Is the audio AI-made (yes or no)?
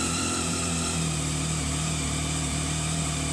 yes